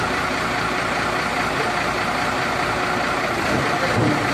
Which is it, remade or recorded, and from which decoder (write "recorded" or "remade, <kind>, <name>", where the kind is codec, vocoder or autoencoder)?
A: recorded